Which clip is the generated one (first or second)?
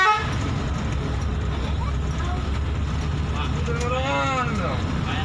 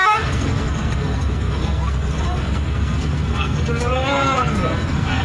second